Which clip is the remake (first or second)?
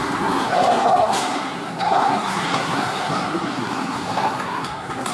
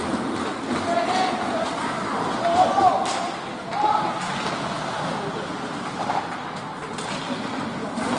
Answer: first